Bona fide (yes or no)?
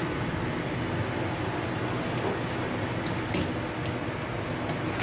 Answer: yes